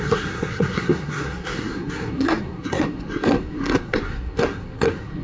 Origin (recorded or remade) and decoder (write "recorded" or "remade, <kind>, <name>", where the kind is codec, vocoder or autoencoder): remade, codec, SNAC